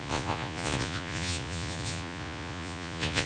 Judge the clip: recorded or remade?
remade